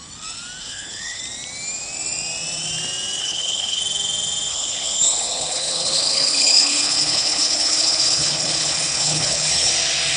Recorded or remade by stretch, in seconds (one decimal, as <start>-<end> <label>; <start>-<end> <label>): 0.0-0.6 recorded; 0.6-1.2 remade; 1.2-3.2 recorded; 3.2-3.8 remade; 3.8-4.5 recorded; 4.5-9.7 remade; 9.7-10.2 recorded